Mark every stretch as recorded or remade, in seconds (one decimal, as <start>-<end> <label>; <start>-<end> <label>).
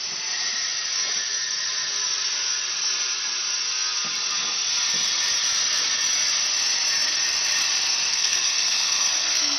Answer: 0.0-8.1 recorded; 8.1-9.6 remade